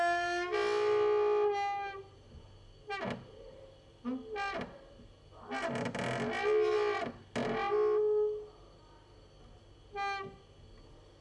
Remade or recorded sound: recorded